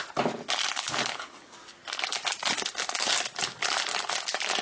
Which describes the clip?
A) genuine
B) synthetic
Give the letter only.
A